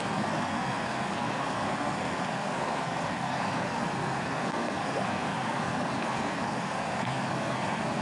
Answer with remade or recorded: remade